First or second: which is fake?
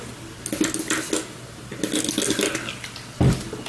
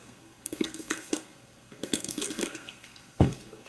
second